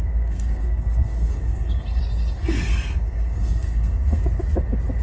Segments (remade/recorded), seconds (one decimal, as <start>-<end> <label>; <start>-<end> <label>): 0.0-2.0 remade; 2.0-2.4 recorded; 2.4-4.2 remade; 4.2-5.0 recorded